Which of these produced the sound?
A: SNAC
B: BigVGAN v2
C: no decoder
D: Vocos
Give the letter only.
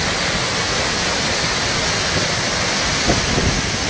B